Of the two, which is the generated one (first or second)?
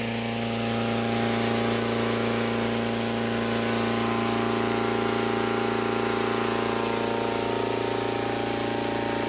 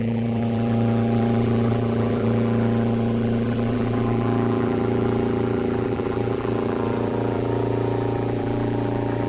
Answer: second